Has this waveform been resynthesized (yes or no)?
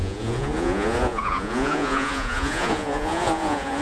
yes